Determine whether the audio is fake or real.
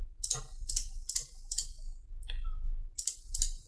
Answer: real